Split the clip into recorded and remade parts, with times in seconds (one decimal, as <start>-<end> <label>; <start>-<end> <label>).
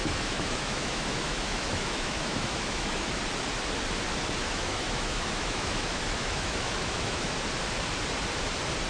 0.0-3.2 remade; 3.2-4.4 recorded; 4.4-7.3 remade; 7.3-8.9 recorded